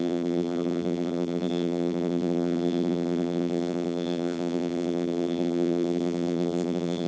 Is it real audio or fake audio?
fake